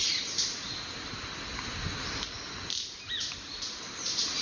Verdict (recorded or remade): recorded